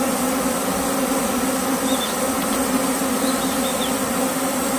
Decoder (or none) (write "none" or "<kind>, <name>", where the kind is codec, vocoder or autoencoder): none